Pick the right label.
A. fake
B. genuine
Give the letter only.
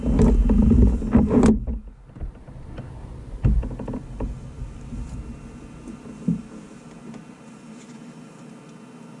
B